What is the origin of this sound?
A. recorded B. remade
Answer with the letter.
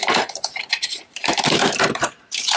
B